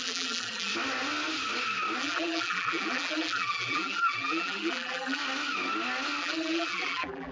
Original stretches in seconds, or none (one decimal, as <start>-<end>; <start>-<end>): 0.7-2.0; 5.2-6.2